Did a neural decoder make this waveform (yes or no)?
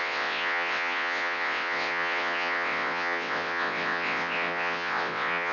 yes